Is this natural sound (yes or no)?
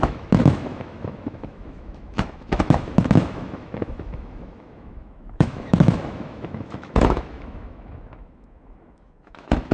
no